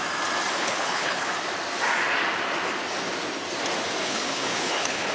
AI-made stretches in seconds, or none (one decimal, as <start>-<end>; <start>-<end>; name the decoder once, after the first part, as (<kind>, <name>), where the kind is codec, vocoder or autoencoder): 0.5-1.3 (codec, HILCodec); 4.0-5.1